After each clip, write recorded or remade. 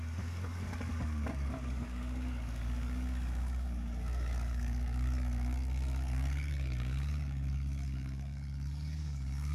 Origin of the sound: remade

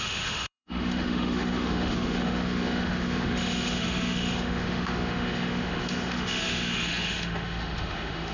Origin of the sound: remade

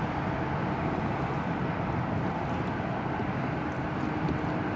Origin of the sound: recorded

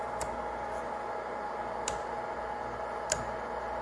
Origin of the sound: recorded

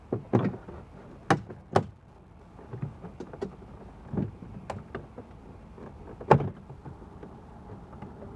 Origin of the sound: recorded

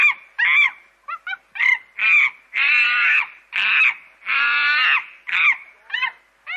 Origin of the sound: recorded